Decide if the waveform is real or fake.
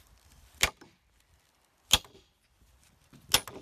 real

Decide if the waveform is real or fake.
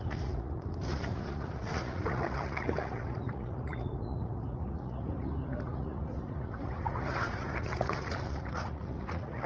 fake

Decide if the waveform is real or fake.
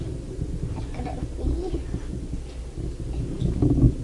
real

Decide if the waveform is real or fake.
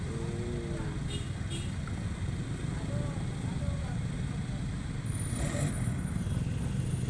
real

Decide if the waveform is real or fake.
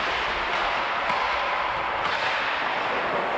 real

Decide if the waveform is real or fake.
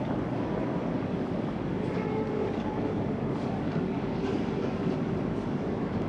fake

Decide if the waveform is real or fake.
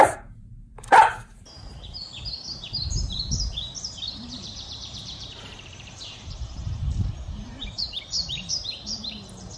fake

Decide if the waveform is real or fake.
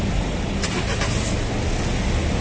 real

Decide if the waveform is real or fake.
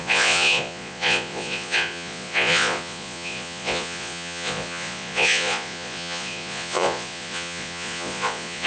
fake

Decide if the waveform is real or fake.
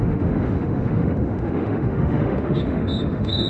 fake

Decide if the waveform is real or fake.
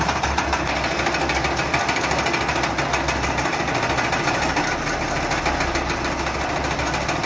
real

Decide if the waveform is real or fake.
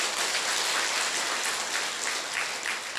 real